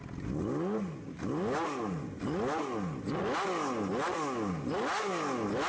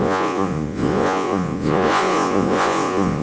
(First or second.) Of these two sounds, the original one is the first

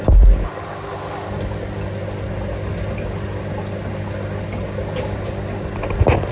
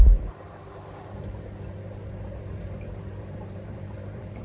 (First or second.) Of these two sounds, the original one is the first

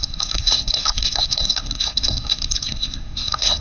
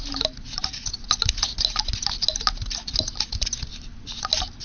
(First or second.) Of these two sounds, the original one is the second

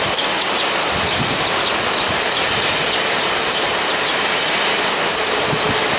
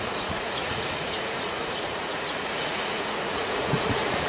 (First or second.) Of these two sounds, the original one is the first